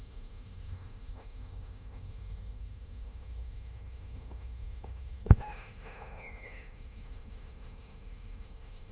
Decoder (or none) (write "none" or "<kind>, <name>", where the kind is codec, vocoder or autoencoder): autoencoder, DAC-VAE